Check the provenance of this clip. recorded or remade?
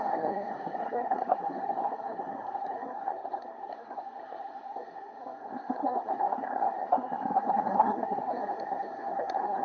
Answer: remade